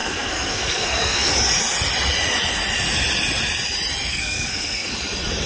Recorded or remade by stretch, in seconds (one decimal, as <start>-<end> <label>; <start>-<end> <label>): 0.0-1.3 remade; 1.3-4.1 recorded; 4.1-4.9 remade; 4.9-5.5 recorded